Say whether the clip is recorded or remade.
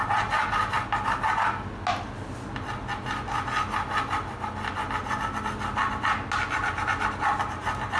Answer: recorded